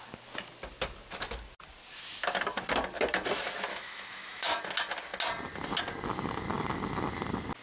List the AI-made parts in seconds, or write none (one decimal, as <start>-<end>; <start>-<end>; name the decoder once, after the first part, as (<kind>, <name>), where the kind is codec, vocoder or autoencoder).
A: 3.7-4.6 (autoencoder, DAC-VAE)